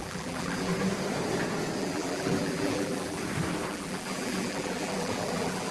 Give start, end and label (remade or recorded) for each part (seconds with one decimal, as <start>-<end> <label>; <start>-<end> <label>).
0.0-0.7 remade; 0.7-1.8 recorded; 1.8-3.2 remade; 3.2-3.7 recorded; 3.7-5.7 remade